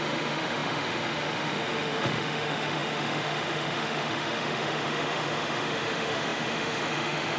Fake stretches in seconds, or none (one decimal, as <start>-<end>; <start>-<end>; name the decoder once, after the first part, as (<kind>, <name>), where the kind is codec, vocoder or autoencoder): 0.0-7.4 (autoencoder, DAC-VAE)